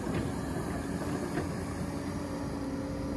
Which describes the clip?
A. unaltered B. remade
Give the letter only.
A